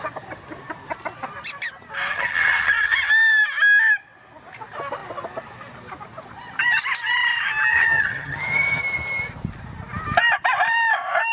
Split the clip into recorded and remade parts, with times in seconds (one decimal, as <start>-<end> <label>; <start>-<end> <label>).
0.0-2.1 recorded; 2.1-3.1 remade; 3.1-7.7 recorded; 7.7-8.8 remade; 8.8-11.3 recorded